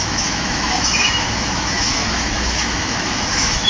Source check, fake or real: fake